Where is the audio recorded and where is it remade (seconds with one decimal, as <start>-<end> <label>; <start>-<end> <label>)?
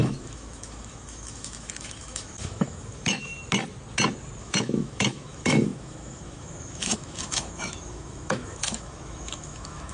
0.0-3.3 remade; 3.3-4.4 recorded; 4.4-9.9 remade